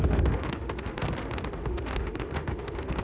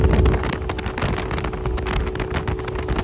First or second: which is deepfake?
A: first